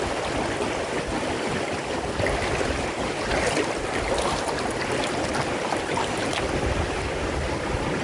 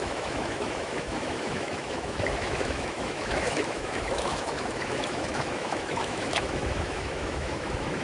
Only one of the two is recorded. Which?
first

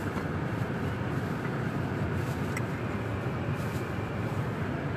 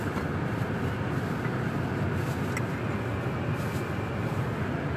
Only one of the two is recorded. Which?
second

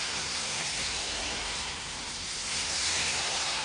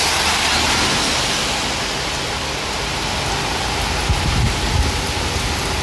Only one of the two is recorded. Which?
second